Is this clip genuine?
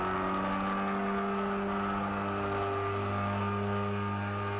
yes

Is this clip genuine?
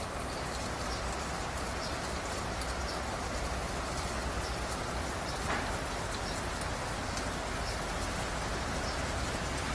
yes